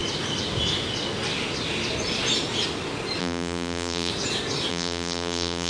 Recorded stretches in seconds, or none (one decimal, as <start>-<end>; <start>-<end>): 0.0-3.2; 4.1-4.7

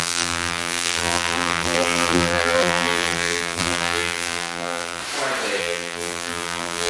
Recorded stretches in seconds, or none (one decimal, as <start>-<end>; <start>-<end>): 5.0-5.6

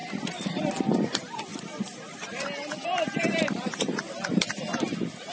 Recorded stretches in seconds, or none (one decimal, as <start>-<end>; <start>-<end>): 0.6-1.5; 4.7-5.3

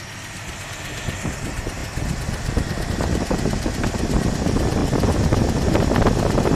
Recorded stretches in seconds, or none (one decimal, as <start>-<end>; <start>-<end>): 0.0-6.6

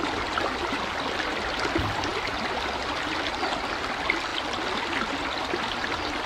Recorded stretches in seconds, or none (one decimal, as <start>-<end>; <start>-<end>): 0.0-6.3

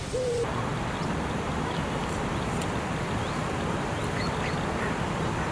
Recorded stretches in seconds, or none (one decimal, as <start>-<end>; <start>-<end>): 0.0-5.5

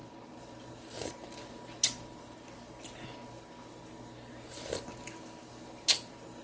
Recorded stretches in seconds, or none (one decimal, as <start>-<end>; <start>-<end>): 0.0-6.4